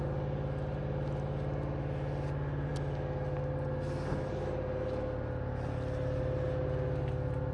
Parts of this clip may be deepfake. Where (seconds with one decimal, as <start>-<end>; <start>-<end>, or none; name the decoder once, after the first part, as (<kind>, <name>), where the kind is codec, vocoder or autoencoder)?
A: none